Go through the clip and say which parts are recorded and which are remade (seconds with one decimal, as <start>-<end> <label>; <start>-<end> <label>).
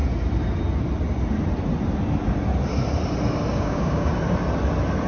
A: 0.0-3.5 recorded; 3.5-4.1 remade; 4.1-5.1 recorded